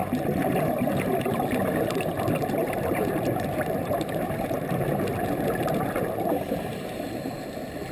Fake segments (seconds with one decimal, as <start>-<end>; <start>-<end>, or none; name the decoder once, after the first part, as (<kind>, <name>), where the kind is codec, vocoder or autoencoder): 2.6-7.3 (vocoder, BigVGAN v2)